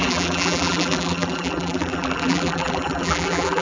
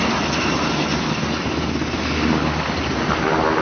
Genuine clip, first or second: second